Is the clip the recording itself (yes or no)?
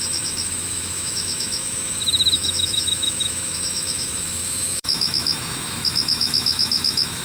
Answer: no